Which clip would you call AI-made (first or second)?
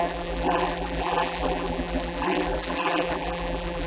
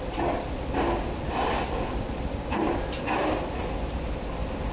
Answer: first